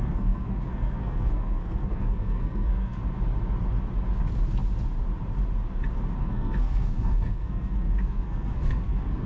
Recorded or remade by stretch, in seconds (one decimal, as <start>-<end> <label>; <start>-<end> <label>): 0.0-3.0 remade; 3.0-6.2 recorded; 6.2-9.3 remade